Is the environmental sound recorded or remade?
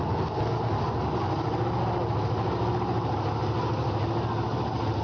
recorded